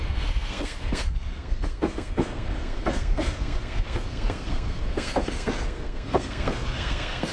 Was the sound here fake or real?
fake